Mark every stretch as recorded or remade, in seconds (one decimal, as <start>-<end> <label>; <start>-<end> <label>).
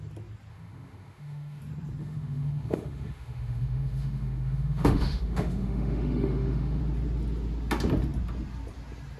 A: 0.0-0.5 recorded; 0.5-1.6 remade; 1.6-2.0 recorded; 2.0-6.8 remade; 6.8-9.2 recorded